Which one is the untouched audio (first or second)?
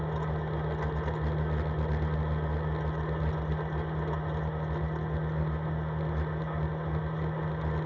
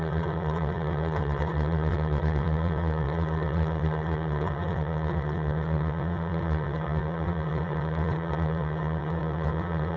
first